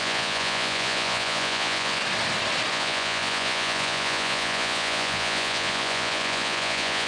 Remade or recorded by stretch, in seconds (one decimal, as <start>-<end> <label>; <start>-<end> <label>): 0.0-2.0 remade; 2.0-2.7 recorded; 2.7-7.1 remade